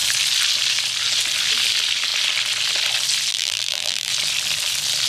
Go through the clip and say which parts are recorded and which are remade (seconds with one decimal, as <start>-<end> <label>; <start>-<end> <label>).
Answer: 0.0-3.3 recorded; 3.3-4.1 remade; 4.1-5.1 recorded